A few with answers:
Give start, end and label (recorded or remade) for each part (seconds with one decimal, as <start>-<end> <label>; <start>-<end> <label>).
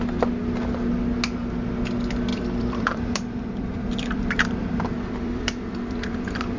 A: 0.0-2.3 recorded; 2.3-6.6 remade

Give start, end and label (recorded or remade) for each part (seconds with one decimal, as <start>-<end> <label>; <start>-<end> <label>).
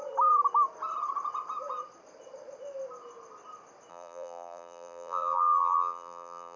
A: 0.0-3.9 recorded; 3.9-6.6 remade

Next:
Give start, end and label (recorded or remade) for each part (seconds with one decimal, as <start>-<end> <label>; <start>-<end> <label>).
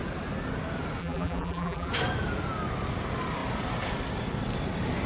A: 0.0-1.0 recorded; 1.0-1.9 remade; 1.9-5.1 recorded